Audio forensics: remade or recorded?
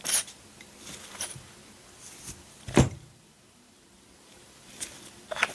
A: remade